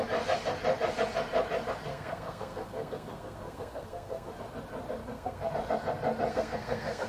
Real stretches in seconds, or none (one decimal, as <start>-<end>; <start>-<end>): 0.0-1.9; 4.3-5.0; 5.5-6.3